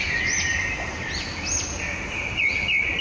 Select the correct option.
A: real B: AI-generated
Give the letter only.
A